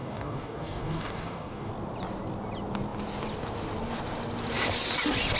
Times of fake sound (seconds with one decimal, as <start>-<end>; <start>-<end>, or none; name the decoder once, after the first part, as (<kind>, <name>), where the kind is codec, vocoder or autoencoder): 0.0-1.7 (codec, DAC)